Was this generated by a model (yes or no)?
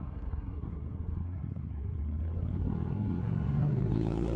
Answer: yes